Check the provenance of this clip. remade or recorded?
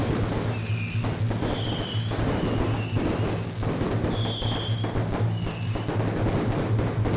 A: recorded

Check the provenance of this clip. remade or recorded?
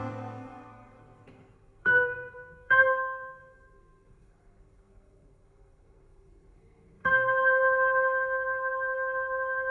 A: remade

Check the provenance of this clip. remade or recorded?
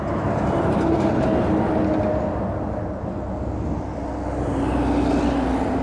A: recorded